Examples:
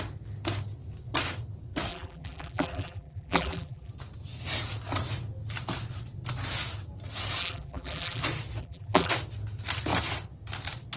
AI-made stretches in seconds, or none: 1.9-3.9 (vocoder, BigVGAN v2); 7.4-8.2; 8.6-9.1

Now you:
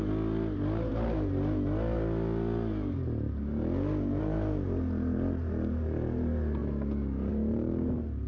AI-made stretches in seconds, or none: none

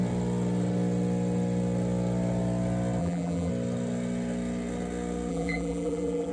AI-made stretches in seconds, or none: 3.0-3.5 (vocoder, BigVGAN v2); 5.3-6.3

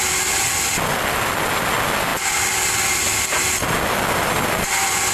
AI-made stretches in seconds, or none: none

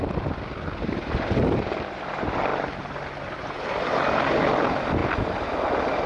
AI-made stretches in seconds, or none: none

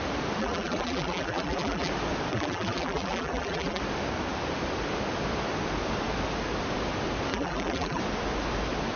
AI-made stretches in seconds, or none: 0.4-1.9 (vocoder, BigVGAN v2); 2.3-3.8; 7.3-8.0